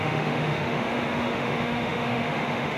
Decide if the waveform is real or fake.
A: fake